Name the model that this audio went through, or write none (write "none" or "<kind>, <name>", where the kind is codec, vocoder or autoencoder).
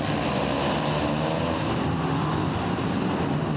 none